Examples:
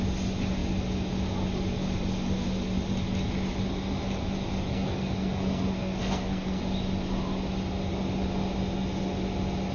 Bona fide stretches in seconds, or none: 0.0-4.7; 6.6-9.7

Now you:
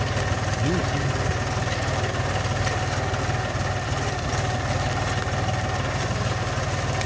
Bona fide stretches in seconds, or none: 0.0-7.1

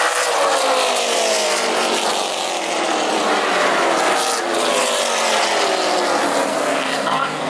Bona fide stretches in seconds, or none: 0.0-6.5

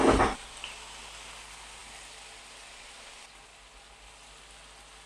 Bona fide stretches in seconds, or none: 0.0-5.1